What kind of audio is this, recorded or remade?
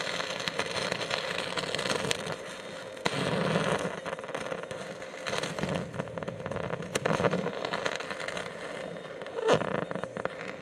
recorded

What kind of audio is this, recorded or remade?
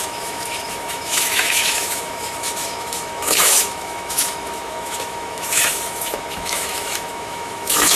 remade